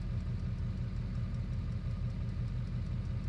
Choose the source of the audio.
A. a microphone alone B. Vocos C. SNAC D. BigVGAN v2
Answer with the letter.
A